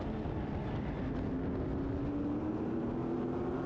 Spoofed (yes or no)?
no